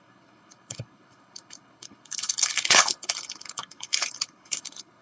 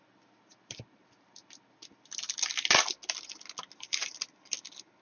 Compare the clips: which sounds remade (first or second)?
first